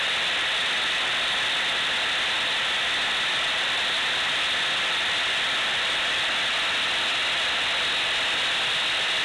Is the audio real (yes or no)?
yes